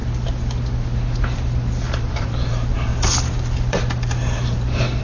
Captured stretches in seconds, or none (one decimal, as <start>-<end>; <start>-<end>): 0.0-2.0; 2.9-5.0